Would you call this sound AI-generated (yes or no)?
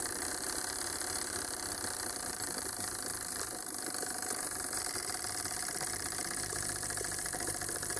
yes